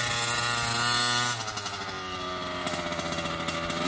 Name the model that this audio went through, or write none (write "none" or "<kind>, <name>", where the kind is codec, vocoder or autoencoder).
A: none